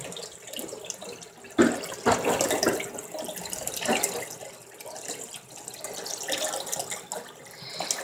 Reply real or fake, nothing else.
real